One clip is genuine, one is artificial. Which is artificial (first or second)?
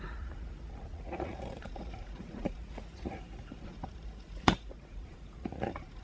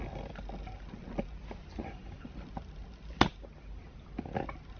first